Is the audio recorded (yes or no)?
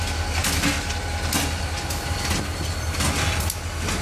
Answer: yes